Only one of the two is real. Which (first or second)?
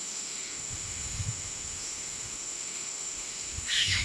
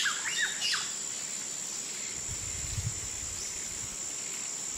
second